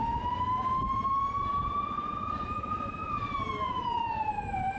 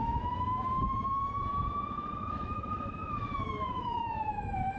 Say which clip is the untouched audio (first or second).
first